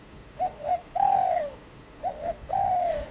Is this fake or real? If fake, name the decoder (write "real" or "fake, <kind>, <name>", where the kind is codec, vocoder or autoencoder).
fake, autoencoder, DAC-VAE